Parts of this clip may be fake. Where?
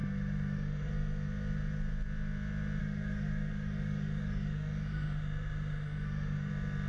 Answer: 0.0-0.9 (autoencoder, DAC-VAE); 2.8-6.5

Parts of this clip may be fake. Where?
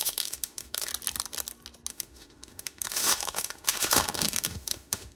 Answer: 0.0-0.9 (autoencoder, DAC-VAE); 1.9-5.1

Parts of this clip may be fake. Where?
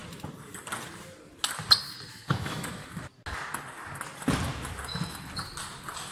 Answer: 2.1-2.8 (autoencoder, DAC-VAE)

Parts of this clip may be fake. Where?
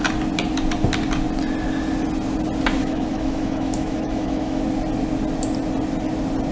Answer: 2.8-4.6 (autoencoder, DAC-VAE)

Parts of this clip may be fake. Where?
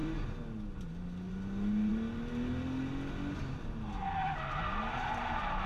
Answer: none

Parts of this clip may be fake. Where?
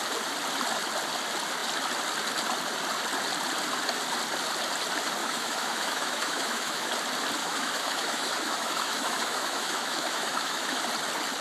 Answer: 5.2-6.9 (autoencoder, DAC-VAE); 7.4-10.8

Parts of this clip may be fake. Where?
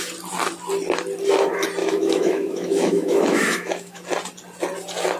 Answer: 1.8-4.0 (autoencoder, DAC-VAE)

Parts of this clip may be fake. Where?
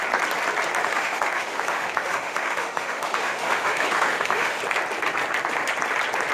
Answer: 0.8-4.6 (autoencoder, DAC-VAE)